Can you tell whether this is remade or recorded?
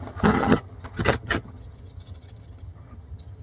remade